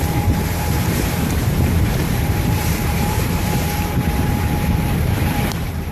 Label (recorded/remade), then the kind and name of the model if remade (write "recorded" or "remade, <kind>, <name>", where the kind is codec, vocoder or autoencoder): remade, vocoder, BigVGAN v2